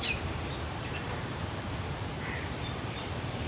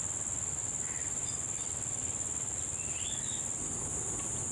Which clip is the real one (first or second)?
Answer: second